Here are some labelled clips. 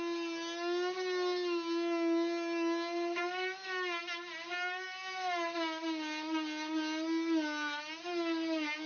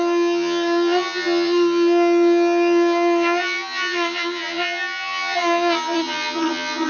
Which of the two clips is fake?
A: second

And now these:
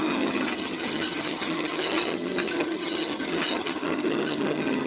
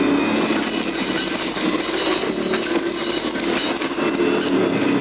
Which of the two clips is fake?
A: first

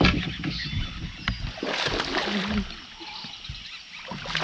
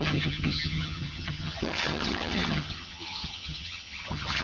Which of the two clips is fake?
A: second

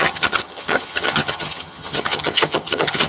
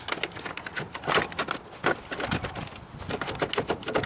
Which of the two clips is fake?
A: first